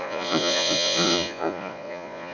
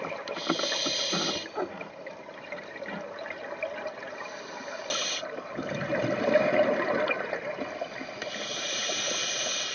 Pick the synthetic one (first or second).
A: first